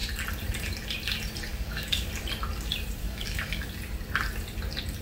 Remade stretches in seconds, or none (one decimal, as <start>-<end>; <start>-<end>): 1.5-2.1; 3.0-3.7